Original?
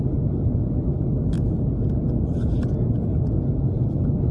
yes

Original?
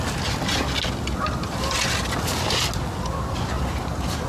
yes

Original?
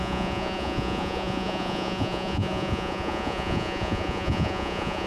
no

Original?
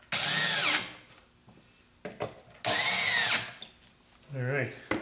yes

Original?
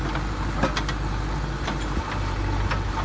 yes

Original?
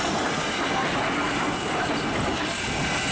yes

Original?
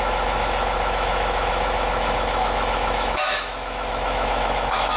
no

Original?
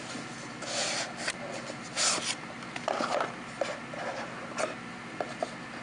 yes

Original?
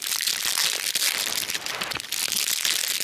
yes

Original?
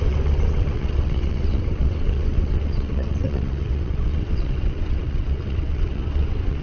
no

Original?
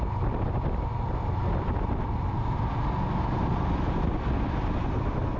yes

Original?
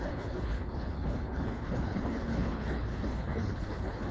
no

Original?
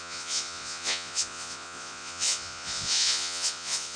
no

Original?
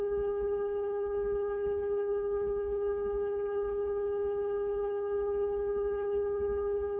no